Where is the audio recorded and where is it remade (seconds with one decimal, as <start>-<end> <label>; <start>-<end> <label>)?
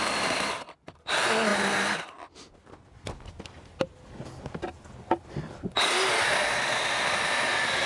0.0-7.9 recorded